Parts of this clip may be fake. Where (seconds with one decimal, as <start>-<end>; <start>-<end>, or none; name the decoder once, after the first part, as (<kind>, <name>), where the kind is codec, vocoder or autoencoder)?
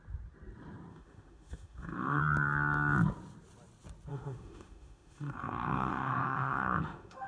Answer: 0.9-2.2 (autoencoder, DAC-VAE); 4.1-7.3